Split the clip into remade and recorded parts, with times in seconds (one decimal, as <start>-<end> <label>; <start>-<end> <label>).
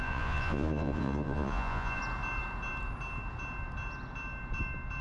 0.0-2.0 remade; 2.0-5.0 recorded